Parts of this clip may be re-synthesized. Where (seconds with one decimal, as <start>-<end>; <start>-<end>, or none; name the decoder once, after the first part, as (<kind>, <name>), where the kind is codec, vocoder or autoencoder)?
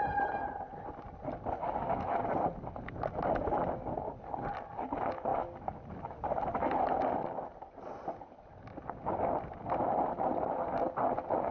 none